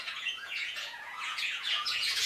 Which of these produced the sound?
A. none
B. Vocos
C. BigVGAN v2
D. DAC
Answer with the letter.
B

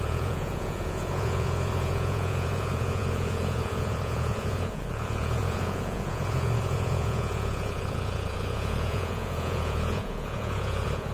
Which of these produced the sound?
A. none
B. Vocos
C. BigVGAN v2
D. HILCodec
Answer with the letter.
B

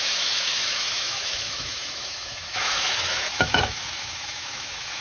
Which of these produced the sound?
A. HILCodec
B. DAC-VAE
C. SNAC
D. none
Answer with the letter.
B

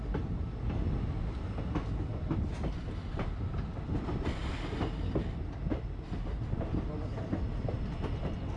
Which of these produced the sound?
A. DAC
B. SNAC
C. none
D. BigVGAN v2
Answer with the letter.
C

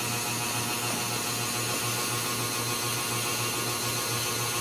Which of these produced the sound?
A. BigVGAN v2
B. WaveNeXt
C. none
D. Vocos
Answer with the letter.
C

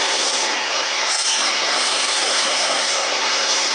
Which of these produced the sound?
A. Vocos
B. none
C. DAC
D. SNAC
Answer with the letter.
D